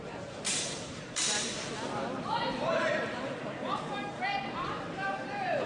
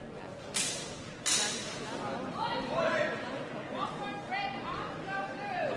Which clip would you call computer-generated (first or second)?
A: first